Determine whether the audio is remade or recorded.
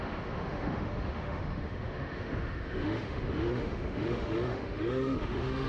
remade